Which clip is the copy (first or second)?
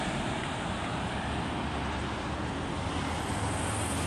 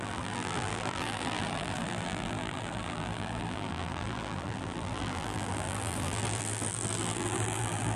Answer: second